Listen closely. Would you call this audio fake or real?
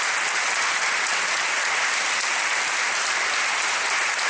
real